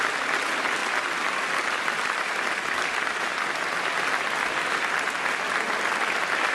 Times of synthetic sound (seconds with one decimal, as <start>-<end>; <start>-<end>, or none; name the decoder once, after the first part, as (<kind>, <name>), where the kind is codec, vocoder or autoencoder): none